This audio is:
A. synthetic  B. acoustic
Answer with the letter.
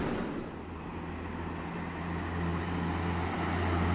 B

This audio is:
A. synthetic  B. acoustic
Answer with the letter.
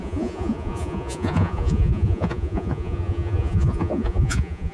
A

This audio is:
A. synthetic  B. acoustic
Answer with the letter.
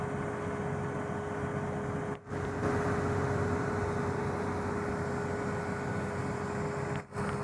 B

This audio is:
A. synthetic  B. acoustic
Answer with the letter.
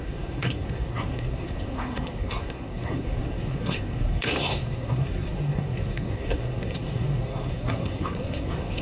A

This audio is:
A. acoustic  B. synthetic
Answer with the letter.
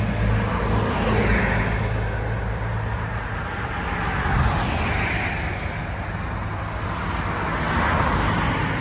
A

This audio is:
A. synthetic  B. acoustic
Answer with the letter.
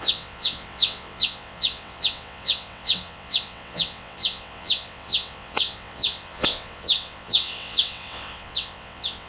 A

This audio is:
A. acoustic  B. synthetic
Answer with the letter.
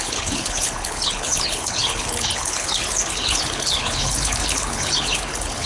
B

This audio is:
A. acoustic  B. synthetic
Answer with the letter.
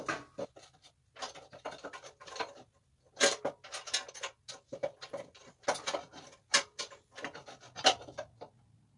A